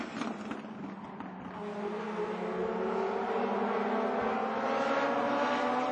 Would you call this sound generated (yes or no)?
no